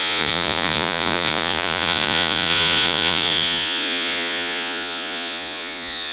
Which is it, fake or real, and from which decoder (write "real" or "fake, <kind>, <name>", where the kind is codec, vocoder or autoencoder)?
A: fake, vocoder, Vocos